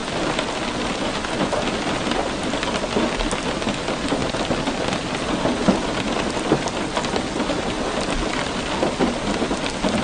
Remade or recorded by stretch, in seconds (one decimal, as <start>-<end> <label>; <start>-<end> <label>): 0.0-10.0 recorded